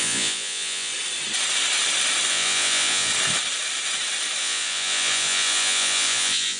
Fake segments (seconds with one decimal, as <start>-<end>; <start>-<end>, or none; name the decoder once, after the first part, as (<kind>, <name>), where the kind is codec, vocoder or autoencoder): 0.0-0.9 (vocoder, Vocos); 2.3-3.1; 4.4-6.6